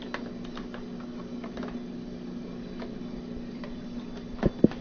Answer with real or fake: real